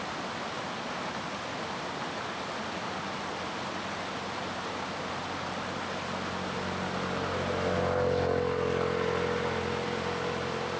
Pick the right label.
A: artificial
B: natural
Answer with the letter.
B